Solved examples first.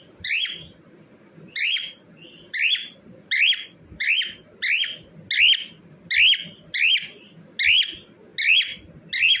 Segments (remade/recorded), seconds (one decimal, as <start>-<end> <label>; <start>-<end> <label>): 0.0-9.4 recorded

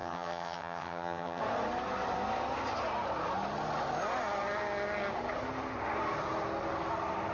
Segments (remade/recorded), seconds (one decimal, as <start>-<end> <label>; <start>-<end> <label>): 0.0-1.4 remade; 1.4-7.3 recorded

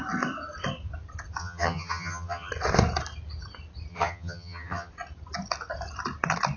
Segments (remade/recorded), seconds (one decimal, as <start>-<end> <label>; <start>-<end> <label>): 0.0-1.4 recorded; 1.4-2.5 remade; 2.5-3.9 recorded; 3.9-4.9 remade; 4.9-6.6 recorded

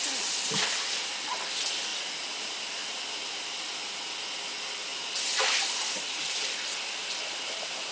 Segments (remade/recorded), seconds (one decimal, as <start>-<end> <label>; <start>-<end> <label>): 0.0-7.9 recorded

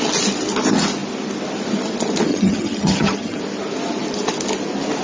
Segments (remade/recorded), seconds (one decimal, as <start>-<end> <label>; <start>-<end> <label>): 0.0-2.3 recorded; 2.3-3.4 remade; 3.4-5.0 recorded